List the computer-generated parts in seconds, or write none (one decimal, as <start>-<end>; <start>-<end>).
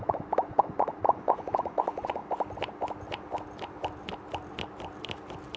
0.0-2.2